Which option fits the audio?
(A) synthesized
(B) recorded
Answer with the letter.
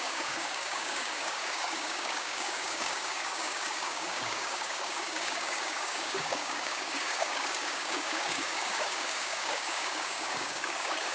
A